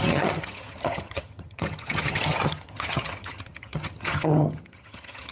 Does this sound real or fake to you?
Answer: fake